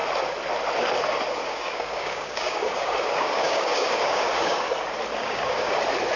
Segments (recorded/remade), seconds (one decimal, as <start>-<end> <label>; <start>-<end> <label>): 0.0-1.4 recorded; 1.4-4.7 remade; 4.7-5.2 recorded; 5.2-5.8 remade; 5.8-6.2 recorded